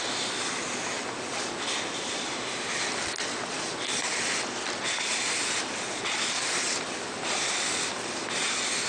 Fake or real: real